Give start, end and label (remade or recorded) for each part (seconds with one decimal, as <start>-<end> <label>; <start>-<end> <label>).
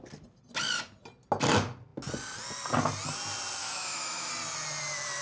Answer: 0.0-3.6 recorded; 3.6-4.3 remade; 4.3-5.2 recorded